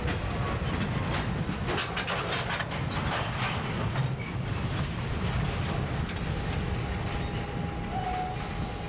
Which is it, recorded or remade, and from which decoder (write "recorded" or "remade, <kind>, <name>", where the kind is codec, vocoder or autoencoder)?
recorded